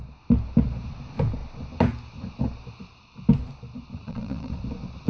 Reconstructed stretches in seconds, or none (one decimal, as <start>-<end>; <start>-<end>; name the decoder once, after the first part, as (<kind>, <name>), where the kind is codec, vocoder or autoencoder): 4.0-4.5 (vocoder, WaveNeXt)